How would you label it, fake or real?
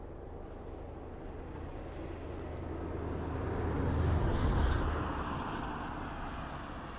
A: real